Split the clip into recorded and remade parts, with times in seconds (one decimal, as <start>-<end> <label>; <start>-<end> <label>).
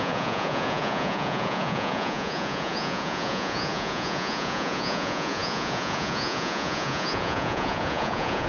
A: 0.0-8.5 remade